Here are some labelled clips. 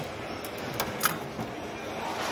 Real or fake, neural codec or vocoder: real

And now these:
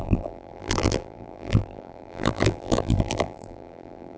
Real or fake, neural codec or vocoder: fake, vocoder, BigVGAN v2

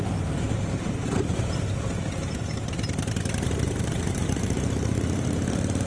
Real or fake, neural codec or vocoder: fake, vocoder, BigVGAN v2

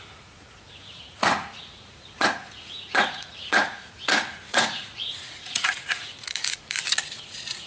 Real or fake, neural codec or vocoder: fake, vocoder, Vocos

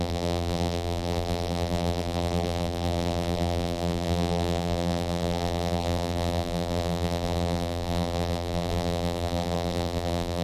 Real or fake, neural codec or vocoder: fake, vocoder, BigVGAN v2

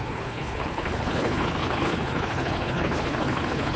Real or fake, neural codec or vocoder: fake, codec, HILCodec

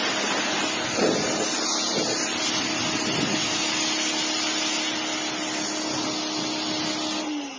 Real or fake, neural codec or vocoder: real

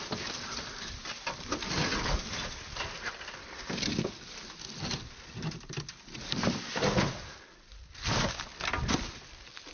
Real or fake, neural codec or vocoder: real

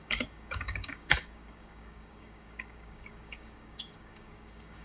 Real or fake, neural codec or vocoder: fake, codec, DAC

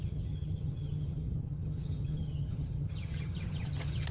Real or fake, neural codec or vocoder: fake, vocoder, HiFi-GAN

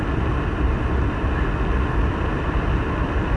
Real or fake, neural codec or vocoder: real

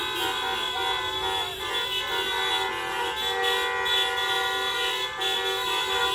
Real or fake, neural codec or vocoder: real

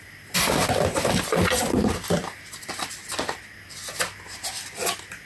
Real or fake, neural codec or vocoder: real